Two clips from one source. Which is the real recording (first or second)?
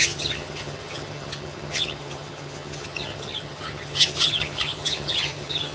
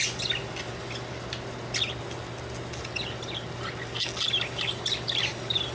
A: second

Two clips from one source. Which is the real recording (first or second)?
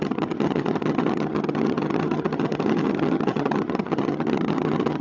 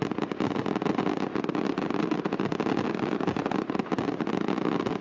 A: second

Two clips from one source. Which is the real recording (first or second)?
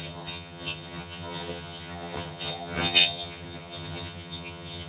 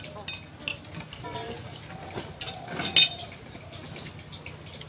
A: second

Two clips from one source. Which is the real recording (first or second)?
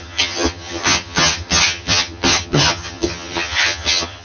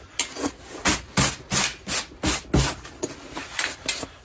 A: second